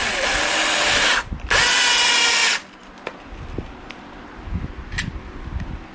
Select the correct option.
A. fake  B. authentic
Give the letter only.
B